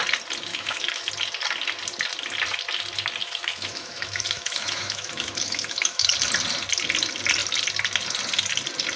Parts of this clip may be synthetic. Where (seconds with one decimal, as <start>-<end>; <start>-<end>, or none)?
0.5-1.1; 3.2-6.1